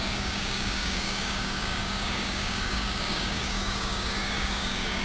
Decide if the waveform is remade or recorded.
remade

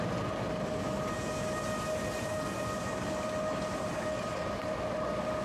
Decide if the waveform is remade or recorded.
recorded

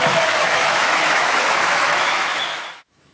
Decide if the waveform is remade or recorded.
remade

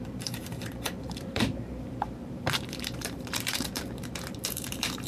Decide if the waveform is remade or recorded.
remade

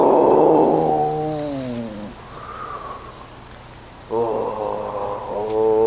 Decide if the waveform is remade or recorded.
recorded